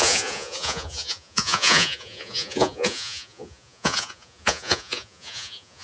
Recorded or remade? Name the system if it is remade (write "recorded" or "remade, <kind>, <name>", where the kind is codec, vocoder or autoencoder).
remade, vocoder, Vocos